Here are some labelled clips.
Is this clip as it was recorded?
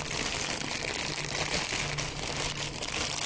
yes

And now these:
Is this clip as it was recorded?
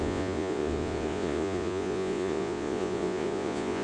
no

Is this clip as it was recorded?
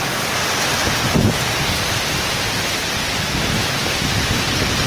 yes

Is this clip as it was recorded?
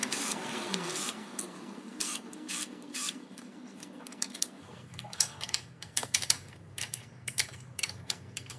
no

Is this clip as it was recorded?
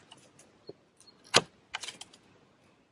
yes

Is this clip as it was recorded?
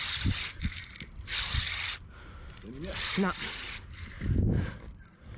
yes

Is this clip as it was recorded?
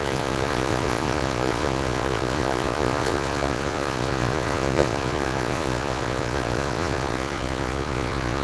no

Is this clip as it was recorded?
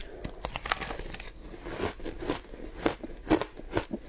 yes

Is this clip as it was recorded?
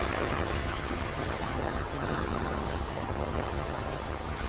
no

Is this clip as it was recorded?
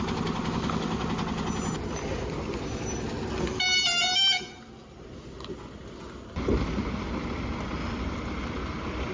yes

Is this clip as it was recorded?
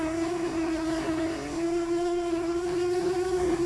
no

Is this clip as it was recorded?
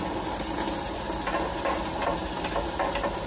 yes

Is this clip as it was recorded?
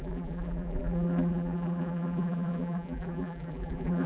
no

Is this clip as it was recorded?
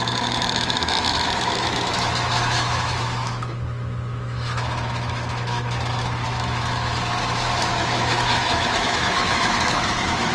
no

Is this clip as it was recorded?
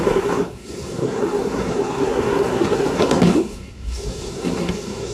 no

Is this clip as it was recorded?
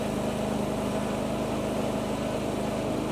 yes